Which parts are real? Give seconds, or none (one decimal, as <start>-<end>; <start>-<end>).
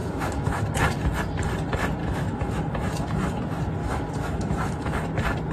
0.6-2.0; 3.4-3.8; 5.1-5.5